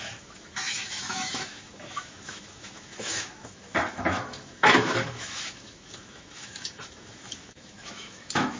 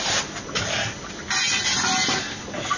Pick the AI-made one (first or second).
first